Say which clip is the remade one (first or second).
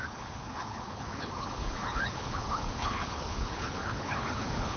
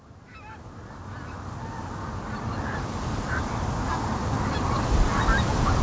first